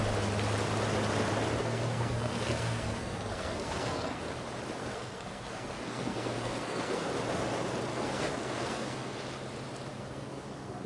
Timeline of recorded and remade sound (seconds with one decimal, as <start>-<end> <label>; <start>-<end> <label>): 0.0-1.6 recorded; 1.6-4.2 remade; 4.2-4.8 recorded; 4.8-7.1 remade; 7.1-7.9 recorded; 7.9-9.2 remade; 9.2-9.9 recorded; 9.9-10.9 remade